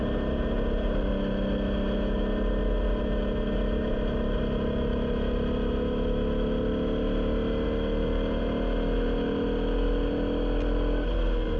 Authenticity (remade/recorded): recorded